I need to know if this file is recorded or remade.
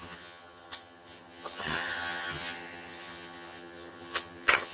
remade